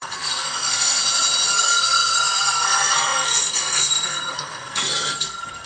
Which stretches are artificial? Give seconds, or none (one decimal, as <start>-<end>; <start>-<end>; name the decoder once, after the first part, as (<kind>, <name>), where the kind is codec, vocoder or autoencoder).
0.0-1.0 (codec, SNAC); 1.5-5.7